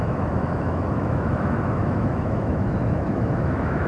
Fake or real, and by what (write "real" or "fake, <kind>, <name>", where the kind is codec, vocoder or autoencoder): fake, autoencoder, DAC-VAE